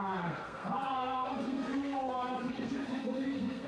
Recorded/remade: remade